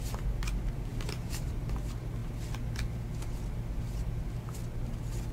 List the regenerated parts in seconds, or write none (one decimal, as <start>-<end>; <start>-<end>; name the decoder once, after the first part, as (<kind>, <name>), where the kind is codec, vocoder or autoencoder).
0.9-1.6 (vocoder, BigVGAN v2)